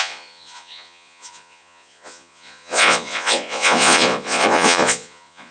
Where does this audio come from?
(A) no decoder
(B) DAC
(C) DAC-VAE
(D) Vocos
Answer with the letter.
D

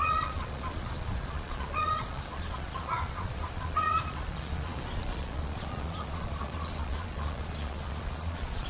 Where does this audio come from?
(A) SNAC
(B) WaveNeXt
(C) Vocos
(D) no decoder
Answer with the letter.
C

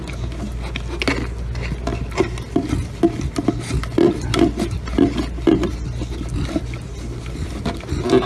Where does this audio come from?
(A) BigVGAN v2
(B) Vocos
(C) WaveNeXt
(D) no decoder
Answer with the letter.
D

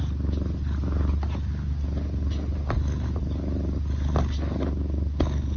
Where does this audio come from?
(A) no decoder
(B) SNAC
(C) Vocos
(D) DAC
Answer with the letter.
A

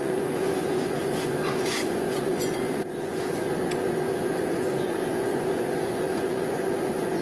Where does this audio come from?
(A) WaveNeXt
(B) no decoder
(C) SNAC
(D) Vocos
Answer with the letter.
D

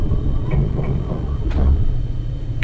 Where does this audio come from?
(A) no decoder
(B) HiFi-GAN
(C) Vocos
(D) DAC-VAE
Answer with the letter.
C